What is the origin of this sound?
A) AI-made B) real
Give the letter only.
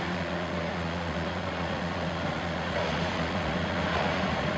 A